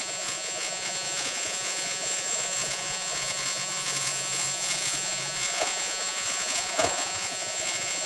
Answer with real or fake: fake